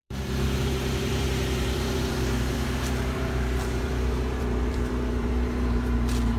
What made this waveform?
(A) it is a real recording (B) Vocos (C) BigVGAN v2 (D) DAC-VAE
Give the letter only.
C